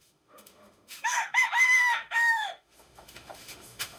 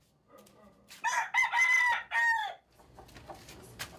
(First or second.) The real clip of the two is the second